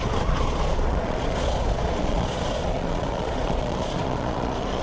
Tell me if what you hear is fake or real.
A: fake